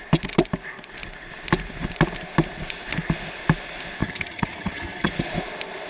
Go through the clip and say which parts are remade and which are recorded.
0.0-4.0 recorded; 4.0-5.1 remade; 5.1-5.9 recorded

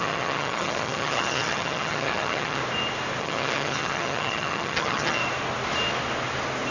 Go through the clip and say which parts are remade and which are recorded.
0.0-2.6 remade; 2.6-3.2 recorded; 3.2-5.2 remade; 5.2-6.7 recorded

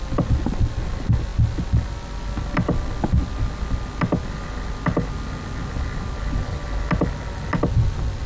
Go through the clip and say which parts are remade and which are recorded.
0.0-8.3 recorded

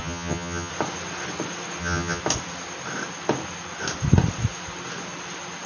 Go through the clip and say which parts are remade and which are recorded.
0.0-0.7 remade; 0.7-1.8 recorded; 1.8-2.2 remade; 2.2-5.7 recorded

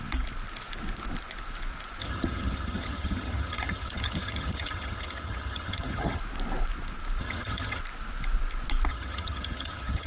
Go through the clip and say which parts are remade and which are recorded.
0.0-2.0 recorded; 2.0-6.2 remade; 6.2-7.2 recorded; 7.2-7.8 remade; 7.8-8.9 recorded; 8.9-10.1 remade

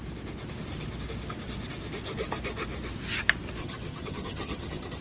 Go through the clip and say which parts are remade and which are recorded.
0.0-3.6 recorded; 3.6-5.0 remade

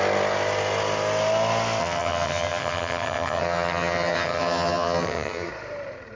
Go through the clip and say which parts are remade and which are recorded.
0.0-1.8 recorded; 1.8-5.5 remade; 5.5-6.2 recorded